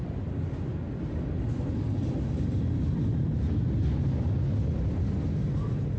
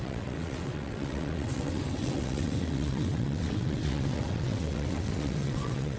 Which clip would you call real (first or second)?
first